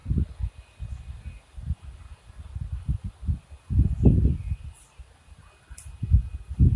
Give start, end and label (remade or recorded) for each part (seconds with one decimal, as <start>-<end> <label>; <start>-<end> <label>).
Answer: 0.0-6.8 recorded